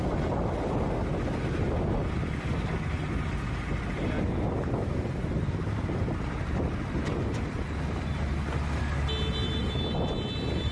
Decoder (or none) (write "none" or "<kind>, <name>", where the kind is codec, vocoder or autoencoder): none